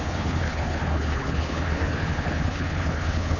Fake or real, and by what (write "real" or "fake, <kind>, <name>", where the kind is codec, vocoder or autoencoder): fake, codec, HILCodec